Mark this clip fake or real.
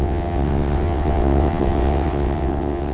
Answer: fake